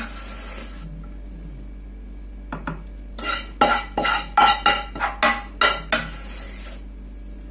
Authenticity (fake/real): real